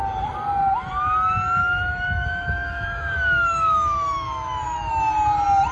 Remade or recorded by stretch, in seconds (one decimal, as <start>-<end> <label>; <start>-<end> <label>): 0.0-1.6 recorded; 1.6-4.9 remade; 4.9-5.7 recorded